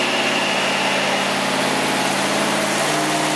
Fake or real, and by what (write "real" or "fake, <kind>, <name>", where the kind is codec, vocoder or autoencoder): real